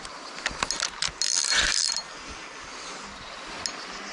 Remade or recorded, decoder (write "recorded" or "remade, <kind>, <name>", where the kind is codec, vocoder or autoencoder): recorded